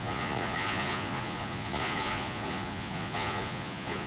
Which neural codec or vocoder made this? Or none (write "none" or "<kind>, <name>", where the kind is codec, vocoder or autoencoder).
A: vocoder, Vocos